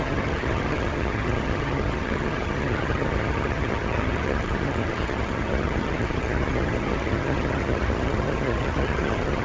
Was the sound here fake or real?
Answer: fake